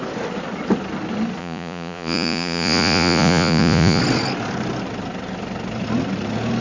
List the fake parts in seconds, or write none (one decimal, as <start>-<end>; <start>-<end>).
1.4-4.0

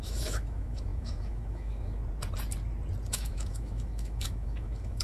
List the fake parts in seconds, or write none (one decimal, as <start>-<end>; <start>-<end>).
0.0-2.0; 3.1-5.0

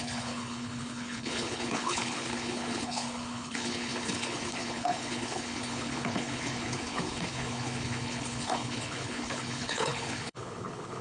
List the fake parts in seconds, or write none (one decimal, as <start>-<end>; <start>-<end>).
0.0-11.0

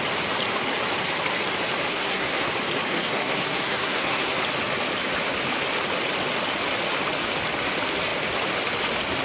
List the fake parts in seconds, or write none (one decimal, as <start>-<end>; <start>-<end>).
1.9-2.5; 2.9-4.4

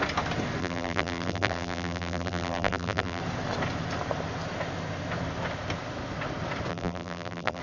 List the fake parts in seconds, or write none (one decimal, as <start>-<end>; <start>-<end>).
0.6-3.2; 6.7-7.6

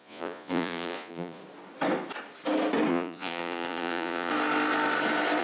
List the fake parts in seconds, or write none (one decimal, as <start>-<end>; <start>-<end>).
0.0-1.4; 2.9-4.3